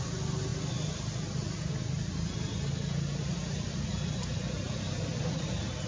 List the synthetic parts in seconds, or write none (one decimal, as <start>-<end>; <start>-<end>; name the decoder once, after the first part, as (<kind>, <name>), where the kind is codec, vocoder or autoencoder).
none